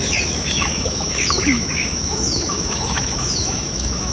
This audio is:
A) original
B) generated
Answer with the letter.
B